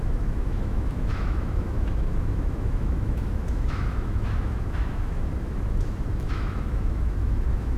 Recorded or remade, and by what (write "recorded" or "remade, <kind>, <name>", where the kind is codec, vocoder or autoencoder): remade, autoencoder, DAC-VAE